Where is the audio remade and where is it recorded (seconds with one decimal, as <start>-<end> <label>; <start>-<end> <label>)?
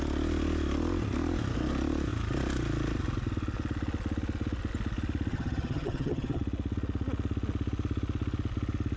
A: 0.0-5.3 recorded; 5.3-6.4 remade; 6.4-9.0 recorded